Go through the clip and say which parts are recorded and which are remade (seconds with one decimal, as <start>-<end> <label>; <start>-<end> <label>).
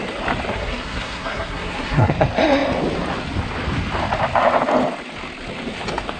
0.0-0.5 recorded; 0.5-2.1 remade; 2.1-6.2 recorded